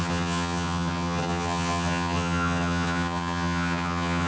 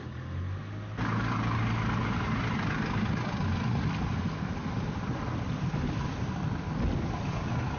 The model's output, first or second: first